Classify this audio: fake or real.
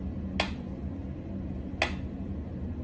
real